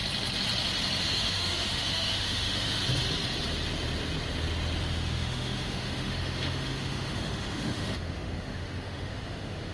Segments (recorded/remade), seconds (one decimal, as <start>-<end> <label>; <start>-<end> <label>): 0.0-1.0 recorded; 1.0-2.8 remade; 2.8-4.8 recorded; 4.8-9.7 remade